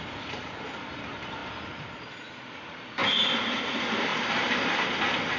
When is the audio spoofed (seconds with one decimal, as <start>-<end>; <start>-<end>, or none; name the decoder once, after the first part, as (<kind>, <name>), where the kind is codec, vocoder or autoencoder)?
none